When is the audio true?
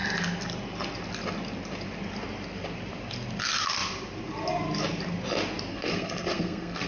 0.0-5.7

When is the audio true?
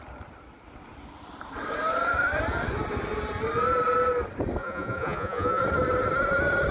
0.0-4.6; 5.6-6.7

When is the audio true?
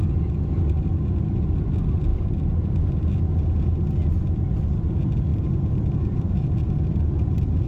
0.0-2.1; 3.1-5.3; 6.6-7.7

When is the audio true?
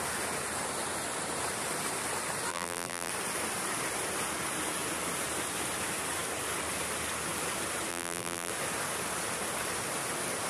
0.0-2.5; 3.1-7.9; 8.5-10.5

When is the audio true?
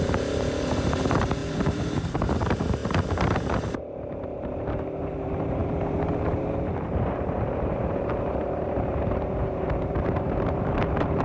none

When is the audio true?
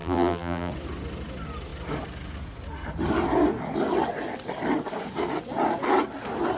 0.7-6.6